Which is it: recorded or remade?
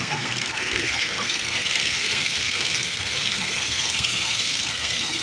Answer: remade